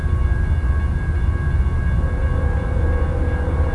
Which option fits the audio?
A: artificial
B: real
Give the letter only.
B